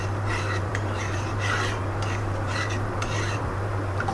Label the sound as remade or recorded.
remade